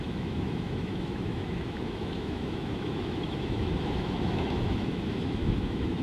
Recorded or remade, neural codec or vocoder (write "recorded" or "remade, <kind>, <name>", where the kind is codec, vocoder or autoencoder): remade, autoencoder, DAC-VAE